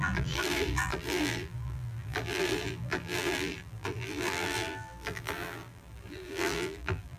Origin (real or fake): fake